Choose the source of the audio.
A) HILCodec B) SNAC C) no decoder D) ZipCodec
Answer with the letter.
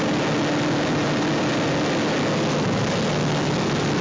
C